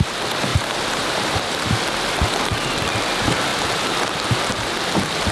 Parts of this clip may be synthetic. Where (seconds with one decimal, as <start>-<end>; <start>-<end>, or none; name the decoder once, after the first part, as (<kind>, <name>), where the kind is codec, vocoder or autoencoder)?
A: 0.5-1.4 (vocoder, BigVGAN v2)